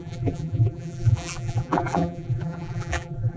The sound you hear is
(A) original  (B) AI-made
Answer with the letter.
B